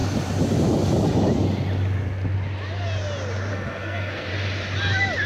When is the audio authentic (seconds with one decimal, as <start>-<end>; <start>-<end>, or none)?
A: 0.0-3.5; 4.3-5.3

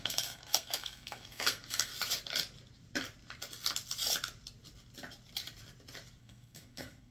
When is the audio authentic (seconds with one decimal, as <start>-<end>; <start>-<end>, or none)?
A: 1.9-6.2

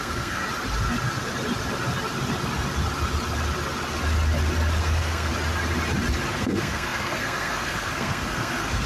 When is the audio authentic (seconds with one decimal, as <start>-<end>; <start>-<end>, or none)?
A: 0.4-4.8; 5.3-6.3

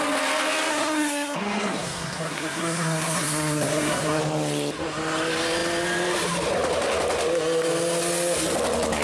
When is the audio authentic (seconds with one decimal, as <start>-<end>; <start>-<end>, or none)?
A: 0.0-0.7; 4.2-9.0

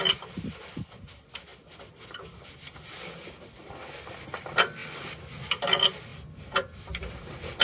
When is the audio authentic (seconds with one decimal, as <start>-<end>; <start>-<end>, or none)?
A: 0.0-7.6

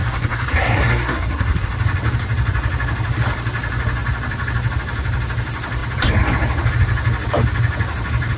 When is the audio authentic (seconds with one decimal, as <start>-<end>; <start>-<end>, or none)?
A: 1.7-8.4

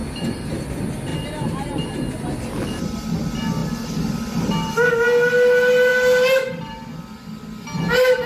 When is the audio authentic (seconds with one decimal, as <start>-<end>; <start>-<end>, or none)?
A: 0.0-8.3